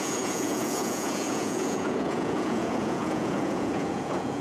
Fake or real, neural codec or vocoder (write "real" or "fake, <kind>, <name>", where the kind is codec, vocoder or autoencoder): fake, vocoder, Vocos